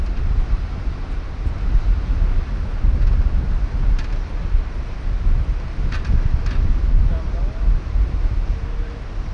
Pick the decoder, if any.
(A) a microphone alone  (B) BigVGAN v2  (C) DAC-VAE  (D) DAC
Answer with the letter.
A